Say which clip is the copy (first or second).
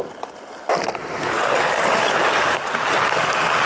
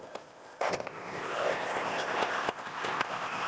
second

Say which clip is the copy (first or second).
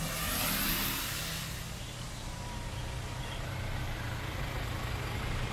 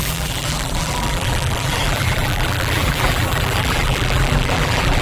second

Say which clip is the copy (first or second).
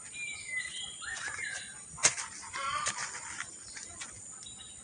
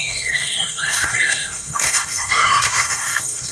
second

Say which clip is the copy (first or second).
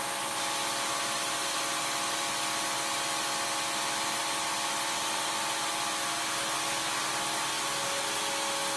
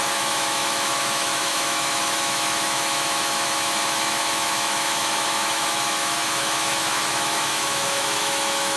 second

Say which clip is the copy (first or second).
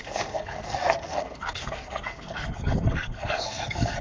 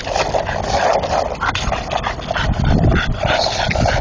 first